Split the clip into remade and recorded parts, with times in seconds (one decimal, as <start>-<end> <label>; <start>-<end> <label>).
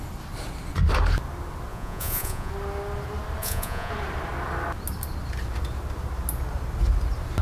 0.0-1.7 recorded; 1.7-2.5 remade; 2.5-3.4 recorded; 3.4-3.9 remade; 3.9-7.4 recorded